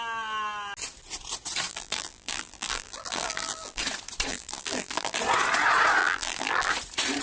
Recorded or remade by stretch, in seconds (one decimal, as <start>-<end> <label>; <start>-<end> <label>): 0.0-1.7 recorded; 1.7-3.8 remade; 3.8-4.3 recorded; 4.3-5.2 remade; 5.2-6.0 recorded; 6.0-6.7 remade; 6.7-7.2 recorded